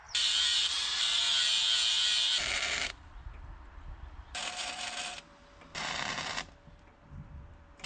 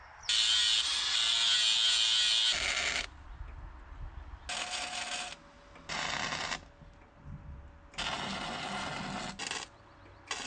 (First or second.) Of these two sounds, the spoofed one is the first